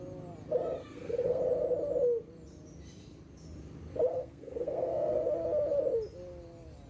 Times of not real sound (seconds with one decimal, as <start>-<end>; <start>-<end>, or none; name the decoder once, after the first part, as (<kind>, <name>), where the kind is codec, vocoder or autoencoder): 0.8-1.4 (codec, SNAC); 4.1-5.2